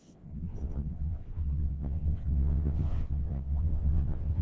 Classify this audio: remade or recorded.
remade